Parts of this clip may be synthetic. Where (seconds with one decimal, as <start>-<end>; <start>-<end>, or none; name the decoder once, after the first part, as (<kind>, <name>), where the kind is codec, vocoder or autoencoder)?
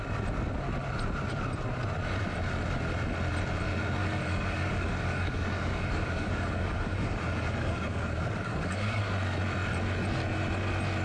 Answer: 4.0-9.0 (codec, DAC)